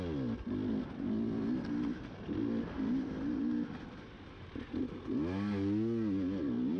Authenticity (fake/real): real